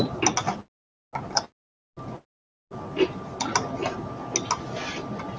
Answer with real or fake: real